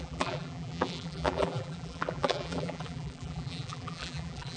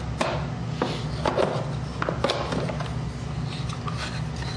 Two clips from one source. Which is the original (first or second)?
second